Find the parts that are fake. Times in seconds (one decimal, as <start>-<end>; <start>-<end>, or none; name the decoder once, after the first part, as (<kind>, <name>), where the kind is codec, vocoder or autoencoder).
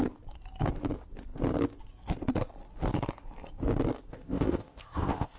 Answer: 4.1-5.4 (codec, ZipCodec)